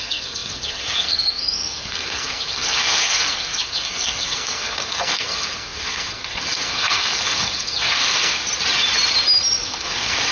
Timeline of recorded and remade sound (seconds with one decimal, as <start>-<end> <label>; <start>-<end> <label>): 0.0-8.4 remade; 8.4-9.6 recorded; 9.6-10.3 remade